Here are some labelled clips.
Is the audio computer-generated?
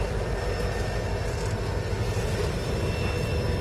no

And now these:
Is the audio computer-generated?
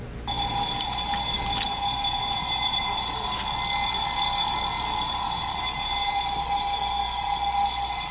no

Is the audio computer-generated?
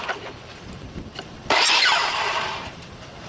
yes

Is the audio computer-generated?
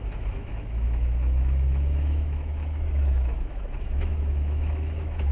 yes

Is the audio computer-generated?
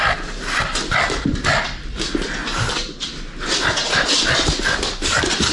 no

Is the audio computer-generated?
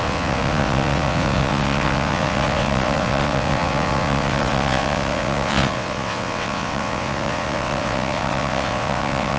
yes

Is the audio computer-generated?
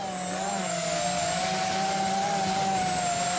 no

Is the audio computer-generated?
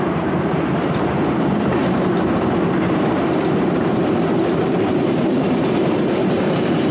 yes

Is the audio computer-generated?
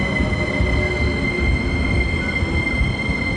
no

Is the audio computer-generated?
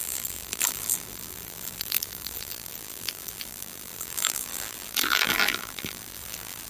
yes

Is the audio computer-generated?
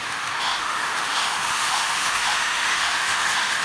yes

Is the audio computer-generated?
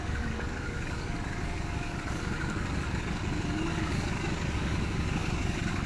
yes